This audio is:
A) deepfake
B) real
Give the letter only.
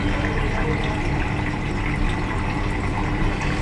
B